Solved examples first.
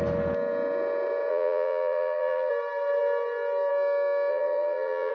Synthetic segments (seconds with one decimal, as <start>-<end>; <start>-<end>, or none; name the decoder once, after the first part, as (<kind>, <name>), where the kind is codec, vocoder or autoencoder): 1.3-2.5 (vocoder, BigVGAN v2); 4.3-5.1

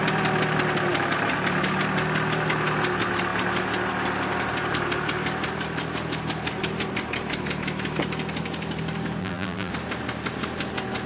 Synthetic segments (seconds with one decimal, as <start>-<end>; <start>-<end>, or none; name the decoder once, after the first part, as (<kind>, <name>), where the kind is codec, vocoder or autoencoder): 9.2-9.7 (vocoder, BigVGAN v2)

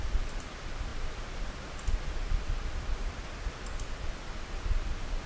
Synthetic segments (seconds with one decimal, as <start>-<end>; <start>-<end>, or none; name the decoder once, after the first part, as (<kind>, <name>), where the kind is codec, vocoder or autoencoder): none

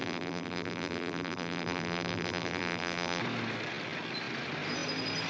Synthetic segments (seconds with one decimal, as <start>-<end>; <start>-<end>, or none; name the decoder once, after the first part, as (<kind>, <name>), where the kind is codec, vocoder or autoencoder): 0.0-3.2 (vocoder, BigVGAN v2)

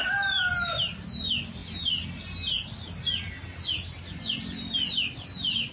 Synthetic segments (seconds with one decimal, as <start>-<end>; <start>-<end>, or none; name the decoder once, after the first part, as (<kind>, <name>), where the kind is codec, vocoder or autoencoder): none

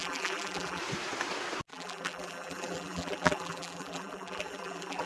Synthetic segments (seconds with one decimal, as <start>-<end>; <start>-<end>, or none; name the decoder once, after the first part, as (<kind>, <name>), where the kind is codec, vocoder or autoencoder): 0.0-0.8 (vocoder, BigVGAN v2); 1.7-5.1